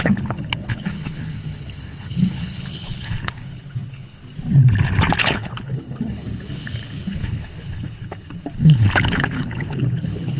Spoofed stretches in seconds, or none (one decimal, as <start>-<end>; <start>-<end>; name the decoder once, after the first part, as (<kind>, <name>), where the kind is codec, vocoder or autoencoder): 0.0-4.2 (codec, HILCodec); 5.2-10.4